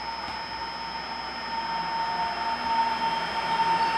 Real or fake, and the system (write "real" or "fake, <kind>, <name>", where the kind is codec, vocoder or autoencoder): real